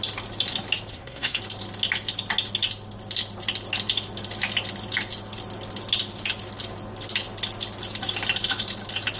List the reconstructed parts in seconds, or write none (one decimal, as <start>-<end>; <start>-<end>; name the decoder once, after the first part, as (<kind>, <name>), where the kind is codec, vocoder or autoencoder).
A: 0.9-1.4 (codec, SNAC)